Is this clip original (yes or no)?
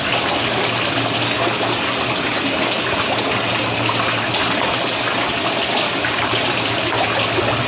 yes